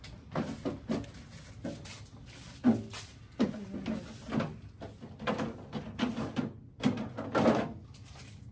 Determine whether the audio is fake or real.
real